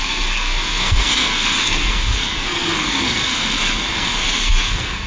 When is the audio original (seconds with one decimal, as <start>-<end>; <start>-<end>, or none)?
none